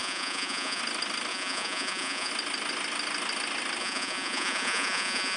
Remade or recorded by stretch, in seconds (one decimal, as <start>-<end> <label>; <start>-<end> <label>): 0.0-0.8 remade; 0.8-1.3 recorded; 1.3-2.3 remade; 2.3-3.8 recorded; 3.8-5.4 remade